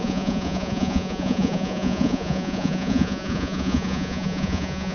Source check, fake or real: fake